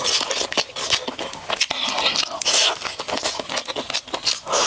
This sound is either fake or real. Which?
real